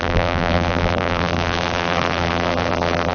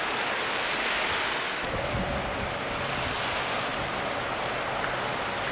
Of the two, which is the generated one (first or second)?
first